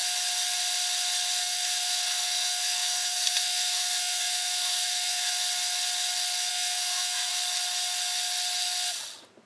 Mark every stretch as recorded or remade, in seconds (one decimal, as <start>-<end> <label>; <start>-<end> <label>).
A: 0.0-1.4 recorded; 1.4-5.3 remade; 5.3-6.5 recorded; 6.5-7.3 remade; 7.3-9.5 recorded